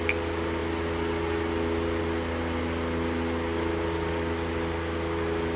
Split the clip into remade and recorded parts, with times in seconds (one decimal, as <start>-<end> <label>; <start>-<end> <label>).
0.0-5.6 recorded